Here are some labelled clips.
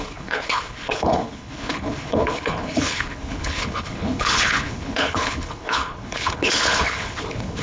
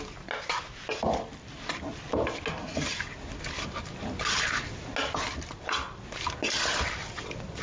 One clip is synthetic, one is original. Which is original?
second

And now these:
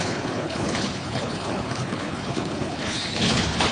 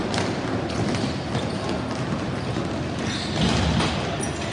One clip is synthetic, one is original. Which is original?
second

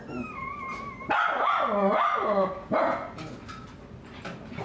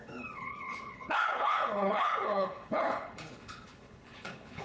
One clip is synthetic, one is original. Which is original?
first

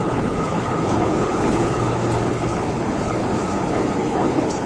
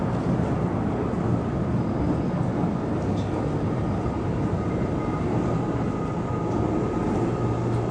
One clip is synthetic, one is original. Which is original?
second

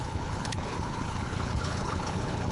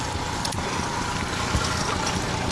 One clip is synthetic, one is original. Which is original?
second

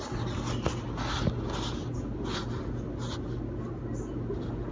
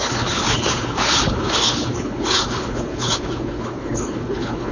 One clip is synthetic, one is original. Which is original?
first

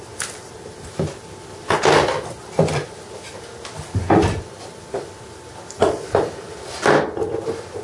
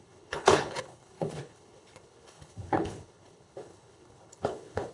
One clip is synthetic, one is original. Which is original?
first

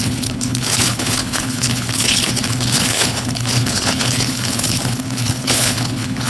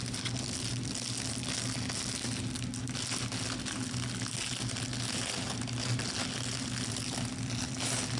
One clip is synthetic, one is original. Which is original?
second